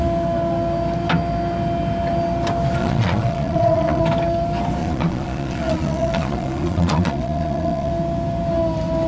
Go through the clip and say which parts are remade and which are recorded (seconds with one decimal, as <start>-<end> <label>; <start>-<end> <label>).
0.0-2.8 recorded; 2.8-4.0 remade; 4.0-4.8 recorded; 4.8-7.9 remade; 7.9-9.1 recorded